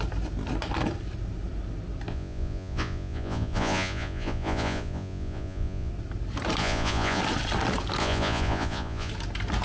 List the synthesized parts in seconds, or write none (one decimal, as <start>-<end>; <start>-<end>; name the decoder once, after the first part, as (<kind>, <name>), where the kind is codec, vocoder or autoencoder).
2.1-5.9 (vocoder, Vocos); 6.6-7.2; 8.0-9.1

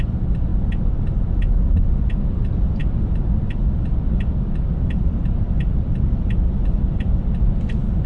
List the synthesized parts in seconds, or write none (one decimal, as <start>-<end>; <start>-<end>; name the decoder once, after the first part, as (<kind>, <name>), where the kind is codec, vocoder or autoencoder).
none